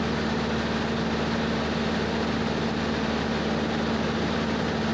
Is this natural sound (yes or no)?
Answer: yes